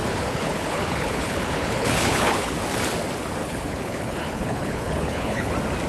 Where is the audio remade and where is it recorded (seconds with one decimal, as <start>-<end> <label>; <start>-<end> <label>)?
0.0-2.5 remade; 2.5-3.4 recorded; 3.4-5.5 remade; 5.5-5.9 recorded